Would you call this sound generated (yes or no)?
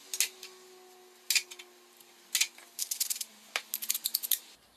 no